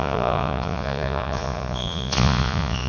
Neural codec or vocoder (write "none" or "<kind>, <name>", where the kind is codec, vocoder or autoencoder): vocoder, Vocos